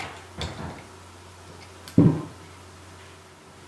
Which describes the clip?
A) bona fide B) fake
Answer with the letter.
A